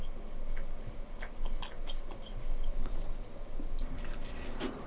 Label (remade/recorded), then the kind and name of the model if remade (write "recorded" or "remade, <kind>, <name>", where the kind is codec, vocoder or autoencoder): recorded